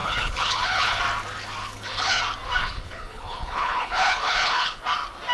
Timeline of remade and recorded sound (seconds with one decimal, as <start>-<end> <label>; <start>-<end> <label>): 0.0-1.0 remade; 1.0-1.6 recorded; 1.6-2.2 remade; 2.2-2.6 recorded; 2.6-4.8 remade; 4.8-5.3 recorded